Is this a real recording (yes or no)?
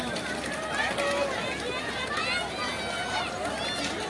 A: yes